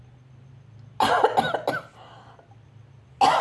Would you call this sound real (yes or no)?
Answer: yes